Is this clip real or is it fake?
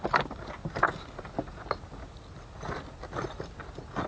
real